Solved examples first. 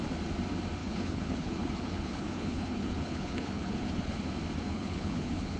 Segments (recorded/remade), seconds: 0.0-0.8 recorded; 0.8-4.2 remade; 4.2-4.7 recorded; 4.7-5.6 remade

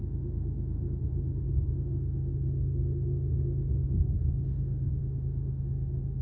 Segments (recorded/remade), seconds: 0.0-6.2 remade

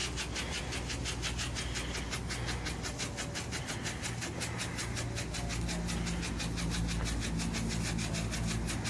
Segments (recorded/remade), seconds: 0.0-8.9 recorded

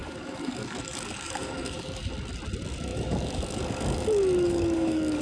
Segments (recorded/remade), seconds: 0.0-2.1 remade; 2.1-2.9 recorded; 2.9-5.2 remade

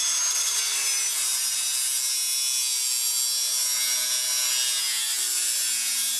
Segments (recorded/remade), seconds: 0.0-6.2 recorded

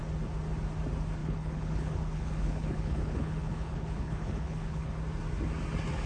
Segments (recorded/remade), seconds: 0.0-1.2 recorded; 1.2-4.9 remade; 4.9-6.1 recorded

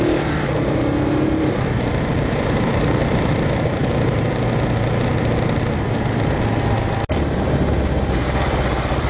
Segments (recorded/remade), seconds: 0.0-3.8 remade; 3.8-9.1 recorded

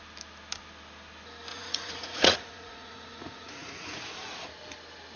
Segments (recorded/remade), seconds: 0.0-1.5 recorded; 1.5-4.4 remade; 4.4-5.2 recorded